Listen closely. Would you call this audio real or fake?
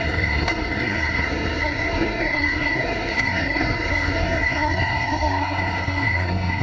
fake